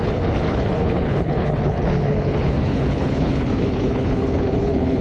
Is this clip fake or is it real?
fake